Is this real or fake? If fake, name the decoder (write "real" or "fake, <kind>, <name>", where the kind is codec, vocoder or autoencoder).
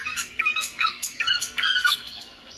fake, codec, SNAC